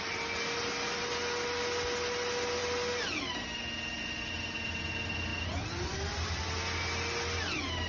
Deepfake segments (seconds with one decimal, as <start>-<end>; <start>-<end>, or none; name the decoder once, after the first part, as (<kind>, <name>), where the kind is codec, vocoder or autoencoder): none